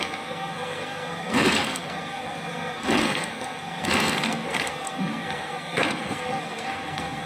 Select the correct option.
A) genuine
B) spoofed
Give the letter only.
B